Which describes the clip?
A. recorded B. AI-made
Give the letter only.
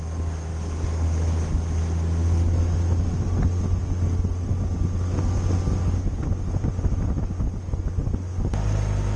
A